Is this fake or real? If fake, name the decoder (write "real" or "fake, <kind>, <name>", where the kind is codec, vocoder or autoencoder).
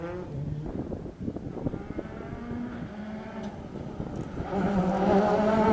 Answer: real